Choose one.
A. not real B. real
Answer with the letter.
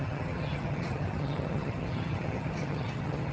A